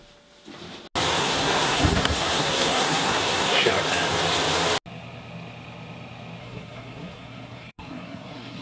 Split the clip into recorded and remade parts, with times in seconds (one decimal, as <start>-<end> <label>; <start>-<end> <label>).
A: 0.0-1.2 recorded; 1.2-3.7 remade; 3.7-6.4 recorded; 6.4-8.6 remade